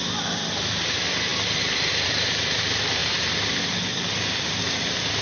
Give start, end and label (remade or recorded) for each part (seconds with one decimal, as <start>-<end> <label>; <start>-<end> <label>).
0.0-1.3 remade; 1.3-1.9 recorded; 1.9-3.0 remade; 3.0-4.1 recorded; 4.1-5.2 remade